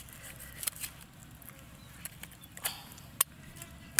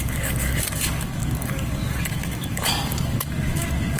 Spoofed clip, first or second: second